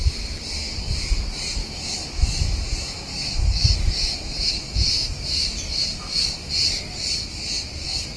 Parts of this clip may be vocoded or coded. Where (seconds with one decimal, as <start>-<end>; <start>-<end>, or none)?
1.6-6.5